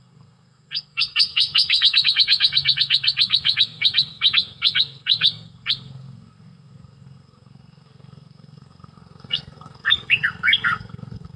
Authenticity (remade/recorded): remade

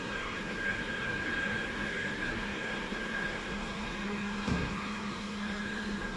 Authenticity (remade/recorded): remade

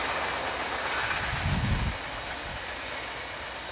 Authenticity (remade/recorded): recorded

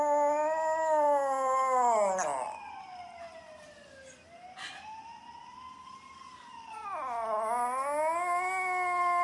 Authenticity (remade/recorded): recorded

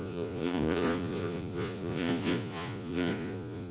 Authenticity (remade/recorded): remade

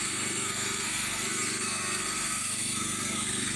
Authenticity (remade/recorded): remade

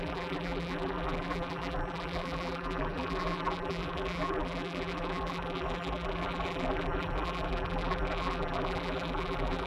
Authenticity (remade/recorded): remade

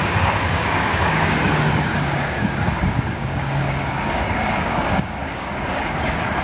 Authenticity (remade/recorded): remade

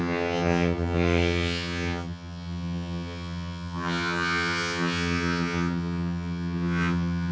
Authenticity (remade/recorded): remade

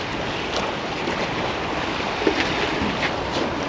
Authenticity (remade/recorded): recorded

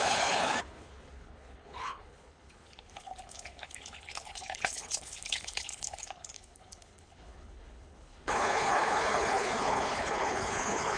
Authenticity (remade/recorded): remade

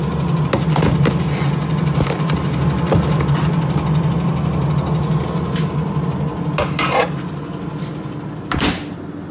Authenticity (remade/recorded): recorded